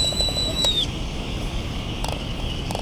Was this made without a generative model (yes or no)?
no